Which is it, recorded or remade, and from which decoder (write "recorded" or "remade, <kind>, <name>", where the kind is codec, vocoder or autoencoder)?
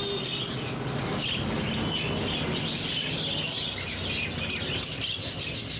recorded